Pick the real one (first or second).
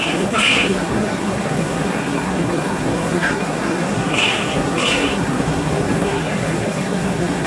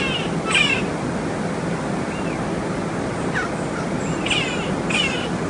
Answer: second